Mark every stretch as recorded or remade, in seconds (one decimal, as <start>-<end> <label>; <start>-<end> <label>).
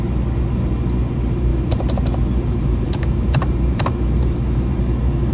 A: 0.0-1.5 recorded; 1.5-4.7 remade; 4.7-5.3 recorded